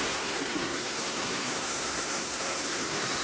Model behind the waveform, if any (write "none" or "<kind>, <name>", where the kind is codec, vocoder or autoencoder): codec, SNAC